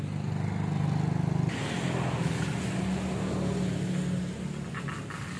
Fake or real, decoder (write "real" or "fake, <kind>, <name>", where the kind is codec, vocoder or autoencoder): real